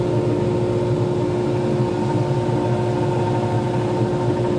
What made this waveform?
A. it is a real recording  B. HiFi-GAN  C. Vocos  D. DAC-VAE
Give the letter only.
A